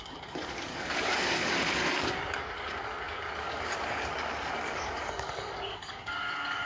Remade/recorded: remade